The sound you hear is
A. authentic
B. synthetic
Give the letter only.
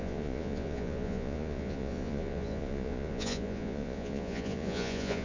B